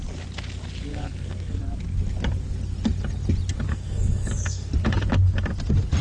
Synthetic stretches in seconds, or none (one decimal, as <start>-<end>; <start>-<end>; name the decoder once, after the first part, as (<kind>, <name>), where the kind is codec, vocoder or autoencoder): 0.9-1.6 (codec, SNAC); 3.7-4.7

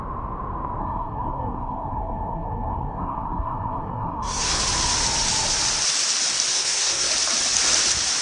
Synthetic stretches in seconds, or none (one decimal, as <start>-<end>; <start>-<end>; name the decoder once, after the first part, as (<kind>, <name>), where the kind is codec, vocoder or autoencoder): 0.8-4.6 (codec, SNAC); 6.5-7.1

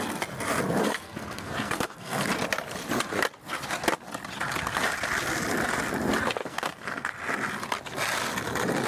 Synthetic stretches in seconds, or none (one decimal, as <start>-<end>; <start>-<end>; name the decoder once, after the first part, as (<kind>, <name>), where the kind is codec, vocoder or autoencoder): 0.8-2.2 (codec, SNAC); 6.4-7.1

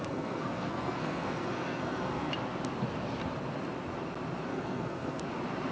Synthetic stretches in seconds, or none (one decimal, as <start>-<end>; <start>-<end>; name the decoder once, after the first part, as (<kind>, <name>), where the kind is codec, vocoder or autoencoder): 0.0-2.3 (codec, SNAC); 4.5-5.2